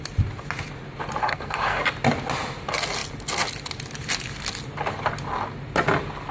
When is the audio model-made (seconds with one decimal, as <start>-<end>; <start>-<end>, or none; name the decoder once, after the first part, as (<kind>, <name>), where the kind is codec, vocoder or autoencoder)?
1.2-1.8 (codec, SNAC)